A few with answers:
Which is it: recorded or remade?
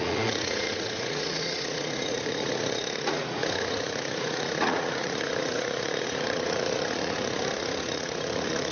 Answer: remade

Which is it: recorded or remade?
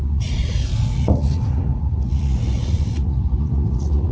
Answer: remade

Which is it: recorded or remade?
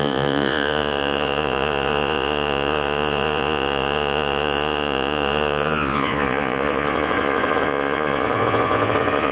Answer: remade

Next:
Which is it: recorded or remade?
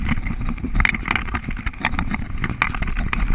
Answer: recorded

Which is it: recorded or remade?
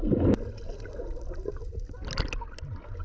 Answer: recorded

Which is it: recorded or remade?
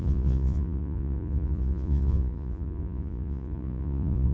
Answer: remade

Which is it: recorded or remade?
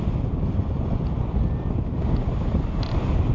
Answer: recorded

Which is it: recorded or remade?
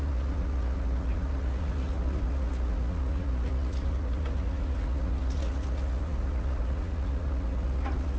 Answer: remade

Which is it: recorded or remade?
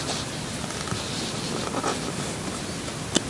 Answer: recorded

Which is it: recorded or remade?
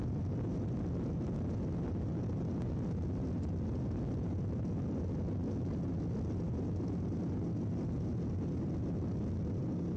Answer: recorded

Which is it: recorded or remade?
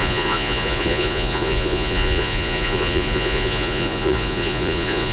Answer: remade